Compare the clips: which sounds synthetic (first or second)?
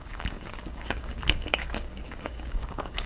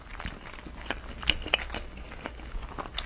first